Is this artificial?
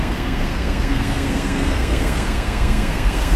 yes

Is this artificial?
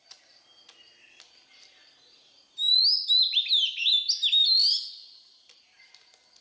no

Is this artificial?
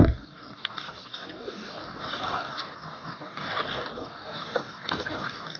yes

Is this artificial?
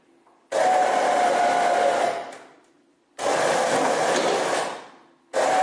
no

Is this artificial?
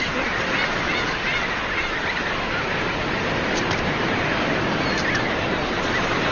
no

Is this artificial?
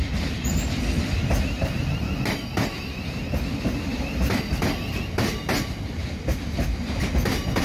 no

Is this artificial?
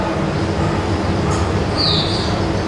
no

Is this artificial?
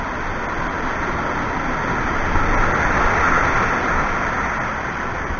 no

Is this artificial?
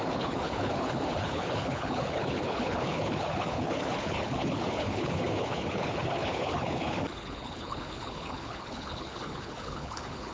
yes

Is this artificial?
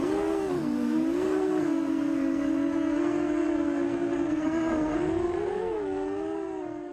yes